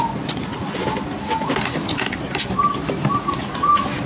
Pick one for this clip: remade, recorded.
recorded